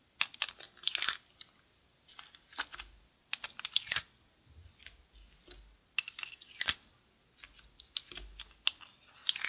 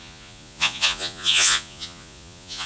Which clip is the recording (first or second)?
first